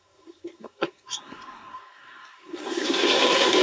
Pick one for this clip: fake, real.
fake